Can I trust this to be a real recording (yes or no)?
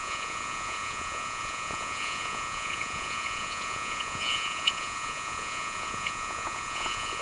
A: no